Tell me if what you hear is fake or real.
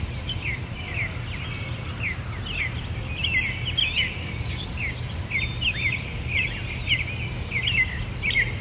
real